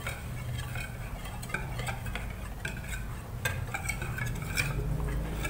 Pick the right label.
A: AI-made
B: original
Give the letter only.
B